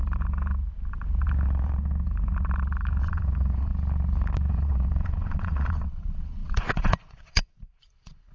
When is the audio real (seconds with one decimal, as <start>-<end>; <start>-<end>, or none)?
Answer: 0.0-3.0; 3.7-4.5